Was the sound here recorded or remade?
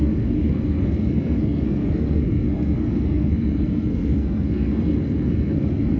remade